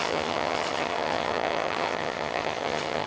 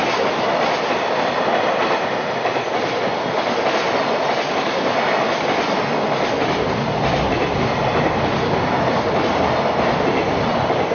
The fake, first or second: first